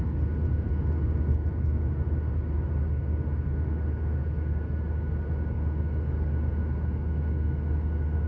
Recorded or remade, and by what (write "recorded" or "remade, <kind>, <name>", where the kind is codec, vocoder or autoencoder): recorded